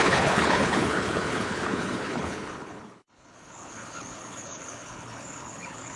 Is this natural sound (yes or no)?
no